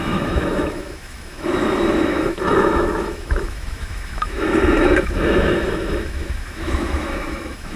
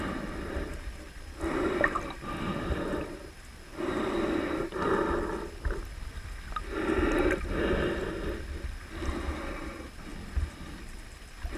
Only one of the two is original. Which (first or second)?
second